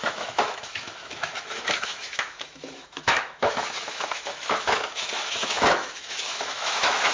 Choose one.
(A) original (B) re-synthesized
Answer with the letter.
B